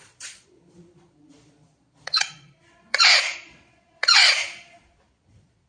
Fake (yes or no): yes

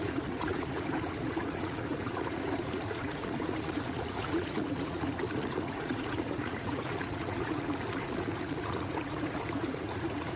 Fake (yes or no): yes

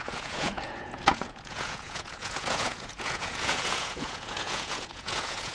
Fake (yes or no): yes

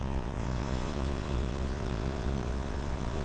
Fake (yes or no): yes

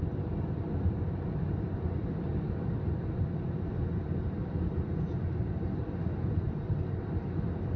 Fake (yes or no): no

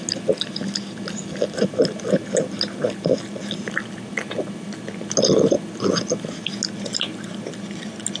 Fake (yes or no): no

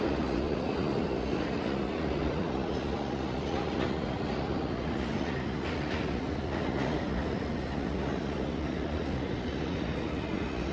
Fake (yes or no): yes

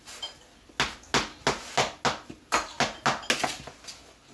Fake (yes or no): no